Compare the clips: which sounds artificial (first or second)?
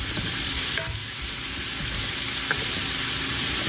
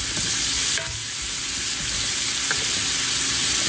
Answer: first